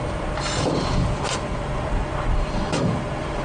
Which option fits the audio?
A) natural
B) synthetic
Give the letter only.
B